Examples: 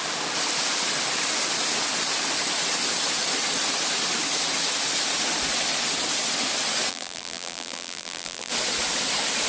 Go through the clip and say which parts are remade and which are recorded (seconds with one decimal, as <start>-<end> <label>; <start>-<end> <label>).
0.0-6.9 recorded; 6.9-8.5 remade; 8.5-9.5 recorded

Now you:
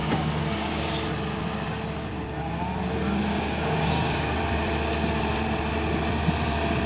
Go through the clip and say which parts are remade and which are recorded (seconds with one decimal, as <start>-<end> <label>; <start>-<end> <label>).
0.0-0.8 remade; 0.8-3.3 recorded; 3.3-4.4 remade; 4.4-6.9 recorded

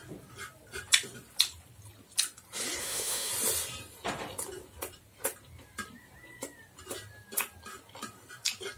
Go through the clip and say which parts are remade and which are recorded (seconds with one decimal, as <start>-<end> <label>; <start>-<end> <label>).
0.0-2.8 recorded; 2.8-3.3 remade; 3.3-8.8 recorded